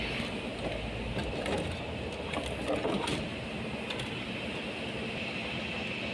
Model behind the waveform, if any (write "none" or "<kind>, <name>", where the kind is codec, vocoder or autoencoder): none